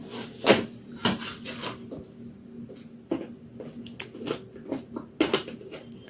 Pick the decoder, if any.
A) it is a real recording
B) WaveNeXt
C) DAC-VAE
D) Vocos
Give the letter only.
A